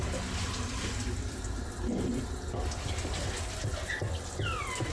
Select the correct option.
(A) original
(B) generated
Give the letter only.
A